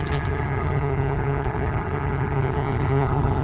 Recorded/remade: remade